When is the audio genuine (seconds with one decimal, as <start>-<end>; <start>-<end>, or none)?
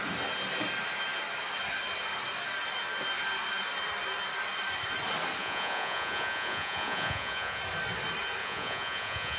0.0-5.4; 7.6-8.4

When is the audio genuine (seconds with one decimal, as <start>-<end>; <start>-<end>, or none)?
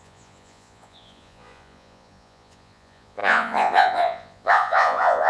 none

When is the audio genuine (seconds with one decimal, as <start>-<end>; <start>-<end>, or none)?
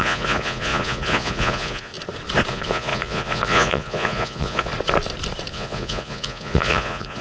1.9-2.5; 4.7-5.5